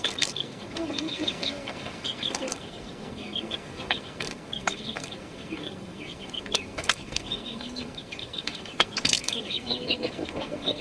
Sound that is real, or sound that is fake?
fake